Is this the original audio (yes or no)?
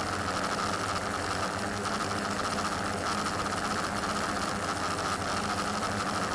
yes